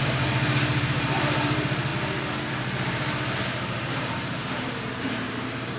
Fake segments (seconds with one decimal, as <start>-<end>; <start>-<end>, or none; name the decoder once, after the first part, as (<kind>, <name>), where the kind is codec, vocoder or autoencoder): 0.0-1.9 (vocoder, BigVGAN v2); 2.5-5.8